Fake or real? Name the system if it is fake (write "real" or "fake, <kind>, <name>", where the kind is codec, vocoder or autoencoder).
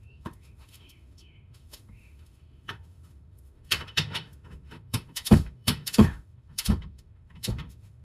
fake, autoencoder, DAC-VAE